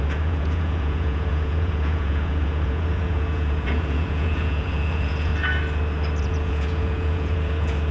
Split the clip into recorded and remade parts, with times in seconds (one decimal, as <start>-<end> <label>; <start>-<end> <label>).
0.0-5.3 remade; 5.3-6.2 recorded; 6.2-7.9 remade

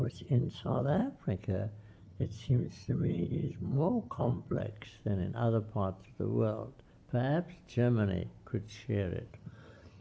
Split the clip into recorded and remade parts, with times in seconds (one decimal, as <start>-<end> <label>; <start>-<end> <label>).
0.0-1.0 remade; 1.0-2.0 recorded; 2.0-4.6 remade; 4.6-9.3 recorded; 9.3-10.0 remade

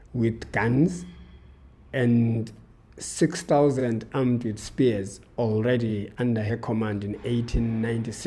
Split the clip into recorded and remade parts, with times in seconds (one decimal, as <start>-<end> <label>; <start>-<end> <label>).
0.0-3.8 recorded; 3.8-4.6 remade; 4.6-5.9 recorded; 5.9-6.5 remade; 6.5-8.3 recorded